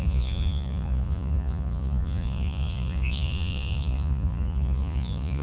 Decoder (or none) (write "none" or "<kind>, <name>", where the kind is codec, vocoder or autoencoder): vocoder, Vocos